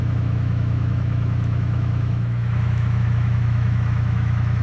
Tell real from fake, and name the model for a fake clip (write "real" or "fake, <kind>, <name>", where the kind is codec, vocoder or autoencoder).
fake, autoencoder, DAC-VAE